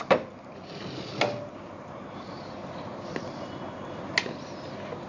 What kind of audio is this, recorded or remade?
recorded